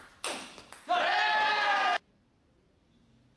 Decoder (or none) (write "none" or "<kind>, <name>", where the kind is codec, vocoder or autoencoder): none